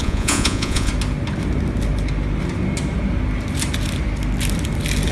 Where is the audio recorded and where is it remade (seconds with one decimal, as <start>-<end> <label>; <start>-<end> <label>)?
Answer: 0.0-0.9 remade; 0.9-5.1 recorded